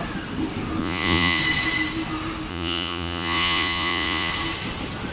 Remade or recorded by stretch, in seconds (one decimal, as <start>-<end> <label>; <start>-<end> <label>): 0.0-0.8 recorded; 0.8-1.4 remade; 1.4-2.5 recorded; 2.5-4.3 remade; 4.3-5.1 recorded